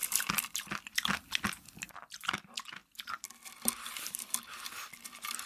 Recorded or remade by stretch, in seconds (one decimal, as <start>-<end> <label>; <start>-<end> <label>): 0.0-1.9 remade; 1.9-2.8 recorded; 2.8-3.5 remade; 3.5-5.5 recorded